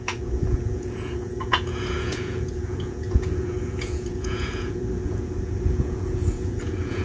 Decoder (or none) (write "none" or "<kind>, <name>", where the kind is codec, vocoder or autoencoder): vocoder, Vocos